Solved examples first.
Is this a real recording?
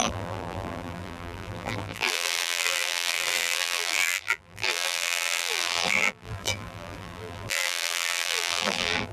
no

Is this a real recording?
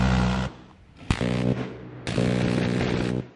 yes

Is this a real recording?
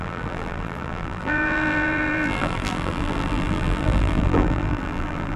no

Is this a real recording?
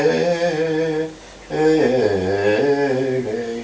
yes